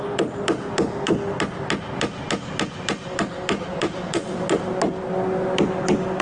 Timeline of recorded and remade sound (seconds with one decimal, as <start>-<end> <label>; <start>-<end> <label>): 0.0-3.7 recorded; 3.7-4.4 remade; 4.4-6.2 recorded